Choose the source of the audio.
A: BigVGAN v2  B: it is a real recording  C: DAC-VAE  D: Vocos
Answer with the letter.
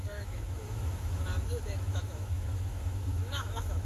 C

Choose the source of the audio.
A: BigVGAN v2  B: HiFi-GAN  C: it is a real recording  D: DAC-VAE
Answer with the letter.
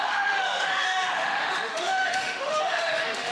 D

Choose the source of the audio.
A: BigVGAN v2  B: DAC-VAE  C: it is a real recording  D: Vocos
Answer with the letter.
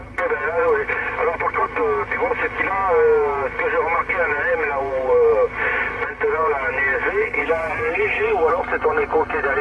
C